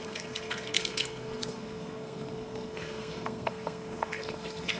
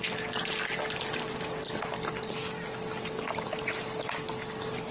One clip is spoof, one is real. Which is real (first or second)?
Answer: second